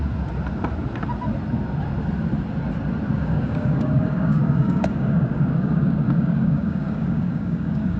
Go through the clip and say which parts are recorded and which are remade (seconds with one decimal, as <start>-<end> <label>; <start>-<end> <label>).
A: 0.0-3.2 recorded; 3.2-8.0 remade